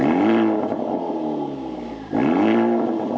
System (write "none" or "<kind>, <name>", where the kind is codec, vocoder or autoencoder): none